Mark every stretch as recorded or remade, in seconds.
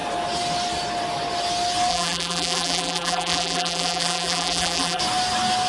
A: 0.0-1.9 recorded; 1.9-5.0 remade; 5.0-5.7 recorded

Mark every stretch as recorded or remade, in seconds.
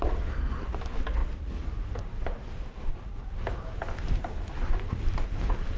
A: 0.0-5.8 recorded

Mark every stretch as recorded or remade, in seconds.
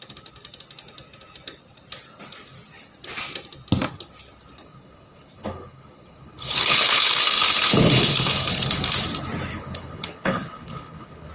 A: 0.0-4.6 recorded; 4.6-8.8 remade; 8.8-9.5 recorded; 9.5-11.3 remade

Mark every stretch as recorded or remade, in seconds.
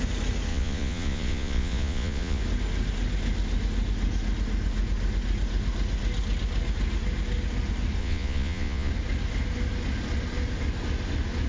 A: 0.0-0.5 recorded; 0.5-2.4 remade; 2.4-8.0 recorded; 8.0-8.9 remade; 8.9-11.5 recorded